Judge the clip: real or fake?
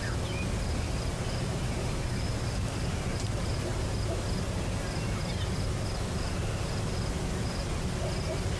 real